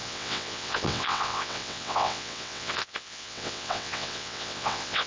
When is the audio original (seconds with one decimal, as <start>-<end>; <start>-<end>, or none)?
none